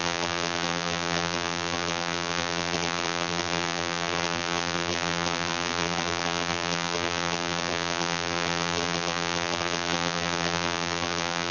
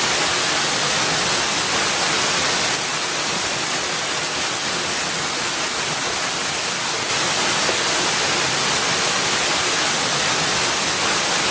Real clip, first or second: second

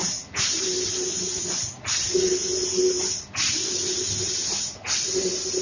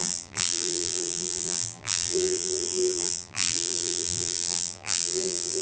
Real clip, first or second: first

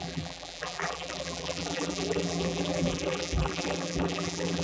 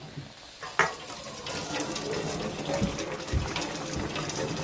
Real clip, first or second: second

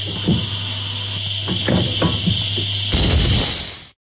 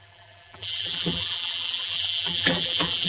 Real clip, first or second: first